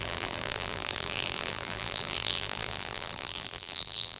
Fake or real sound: fake